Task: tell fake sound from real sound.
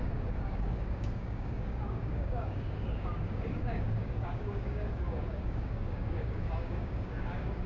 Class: fake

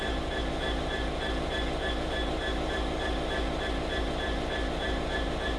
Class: real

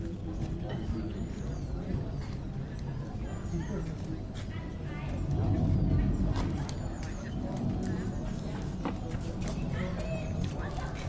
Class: real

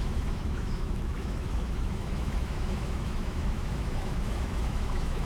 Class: fake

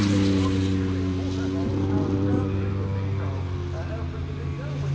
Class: real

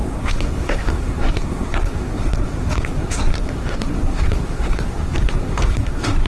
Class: fake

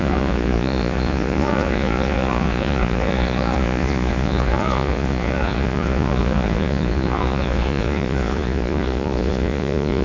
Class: fake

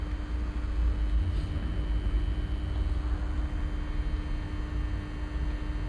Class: real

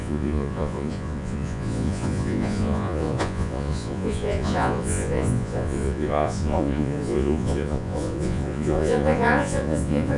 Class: fake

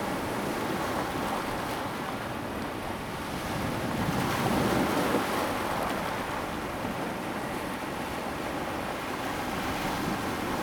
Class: real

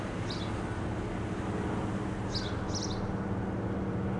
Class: real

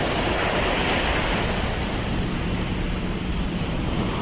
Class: real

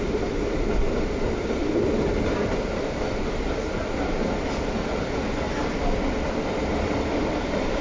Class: real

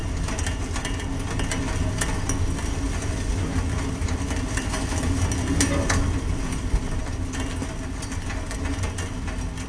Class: real